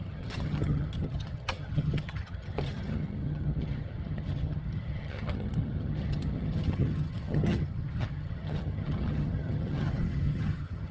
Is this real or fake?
fake